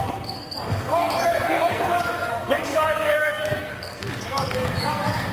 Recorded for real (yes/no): no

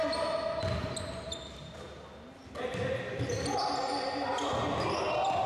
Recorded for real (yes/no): yes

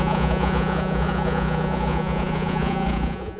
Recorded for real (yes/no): no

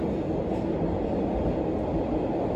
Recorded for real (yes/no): yes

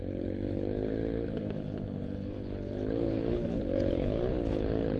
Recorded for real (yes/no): no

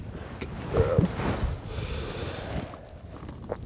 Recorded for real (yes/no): yes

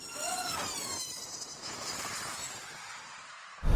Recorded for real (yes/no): no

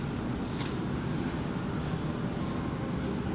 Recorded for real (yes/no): yes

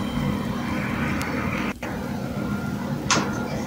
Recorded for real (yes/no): yes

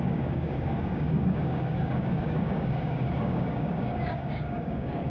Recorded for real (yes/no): no